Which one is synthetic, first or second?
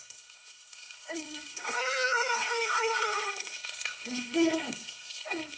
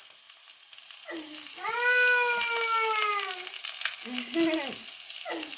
first